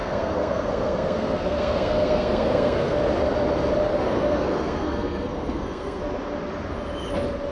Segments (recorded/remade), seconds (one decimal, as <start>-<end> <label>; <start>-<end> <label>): 0.0-3.0 remade; 3.0-3.9 recorded; 3.9-6.0 remade; 6.0-7.5 recorded